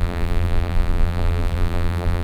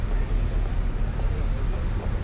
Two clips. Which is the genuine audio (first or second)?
second